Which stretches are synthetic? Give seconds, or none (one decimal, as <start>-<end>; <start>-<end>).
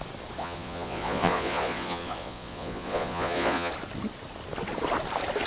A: 0.4-3.7